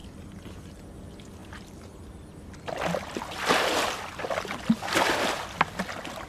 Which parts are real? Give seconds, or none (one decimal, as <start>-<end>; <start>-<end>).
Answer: 0.0-6.3